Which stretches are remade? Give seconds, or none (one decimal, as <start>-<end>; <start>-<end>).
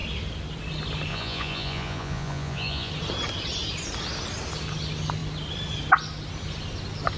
1.1-2.9